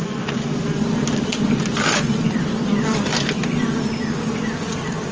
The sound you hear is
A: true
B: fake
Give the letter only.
A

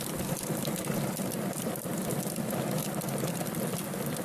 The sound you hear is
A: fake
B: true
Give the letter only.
B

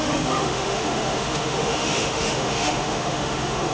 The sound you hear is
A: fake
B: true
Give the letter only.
A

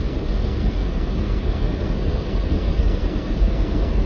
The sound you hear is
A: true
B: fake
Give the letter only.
B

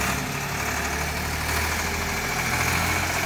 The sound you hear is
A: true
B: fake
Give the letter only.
A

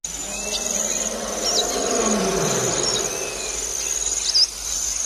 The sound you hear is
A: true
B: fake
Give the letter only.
A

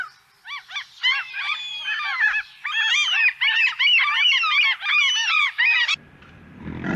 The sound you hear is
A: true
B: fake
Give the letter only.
B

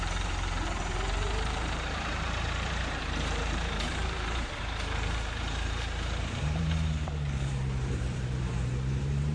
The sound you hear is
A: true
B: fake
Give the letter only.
B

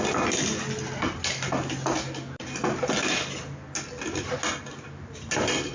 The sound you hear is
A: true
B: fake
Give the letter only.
A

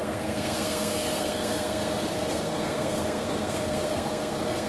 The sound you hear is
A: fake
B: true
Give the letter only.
A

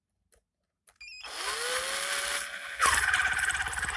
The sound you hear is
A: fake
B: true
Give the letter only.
B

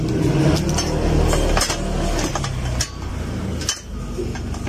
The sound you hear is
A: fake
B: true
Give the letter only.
B